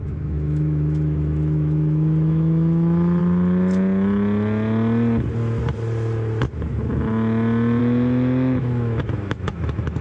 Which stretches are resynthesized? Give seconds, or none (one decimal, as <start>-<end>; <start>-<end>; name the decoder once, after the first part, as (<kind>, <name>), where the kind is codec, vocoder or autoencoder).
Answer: 0.0-3.2 (autoencoder, DAC-VAE); 7.8-10.0